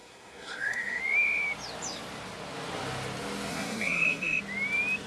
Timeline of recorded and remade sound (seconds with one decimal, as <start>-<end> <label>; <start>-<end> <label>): 0.0-1.0 remade; 1.0-3.5 recorded; 3.5-4.4 remade; 4.4-5.1 recorded